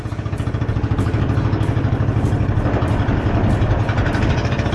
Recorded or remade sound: recorded